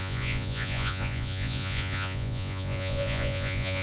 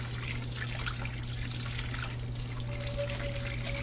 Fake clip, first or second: first